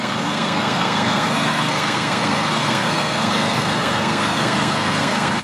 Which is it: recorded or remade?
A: remade